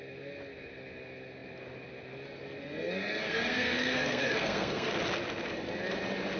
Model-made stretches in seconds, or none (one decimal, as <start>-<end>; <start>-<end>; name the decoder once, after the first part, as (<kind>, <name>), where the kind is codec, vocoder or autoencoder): 2.6-4.9 (codec, SNAC)